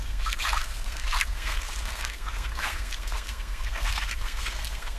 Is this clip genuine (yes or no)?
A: no